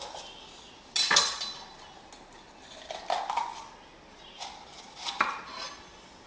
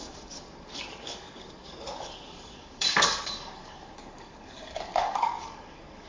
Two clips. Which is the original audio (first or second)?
first